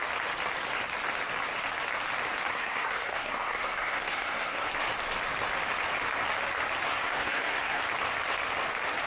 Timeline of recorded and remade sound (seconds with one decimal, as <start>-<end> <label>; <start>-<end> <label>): 0.0-2.5 recorded; 2.5-4.7 remade; 4.7-6.9 recorded; 6.9-7.8 remade; 7.8-9.1 recorded